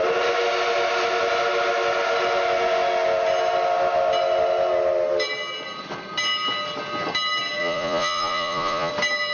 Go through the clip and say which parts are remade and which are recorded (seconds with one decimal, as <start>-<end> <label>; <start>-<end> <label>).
0.0-7.6 recorded; 7.6-8.9 remade; 8.9-9.3 recorded